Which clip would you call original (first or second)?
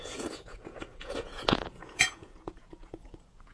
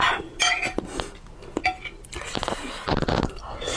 second